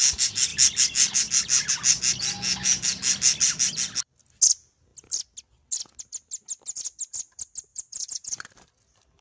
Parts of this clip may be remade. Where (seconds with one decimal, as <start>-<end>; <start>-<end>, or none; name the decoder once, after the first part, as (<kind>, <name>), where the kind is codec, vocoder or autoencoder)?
7.7-8.4 (vocoder, Vocos)